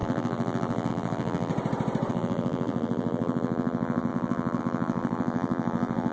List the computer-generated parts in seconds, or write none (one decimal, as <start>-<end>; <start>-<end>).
0.0-1.5; 2.1-6.1